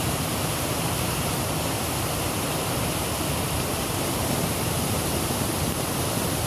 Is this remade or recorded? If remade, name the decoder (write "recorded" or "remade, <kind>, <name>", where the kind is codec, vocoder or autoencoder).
remade, vocoder, BigVGAN v2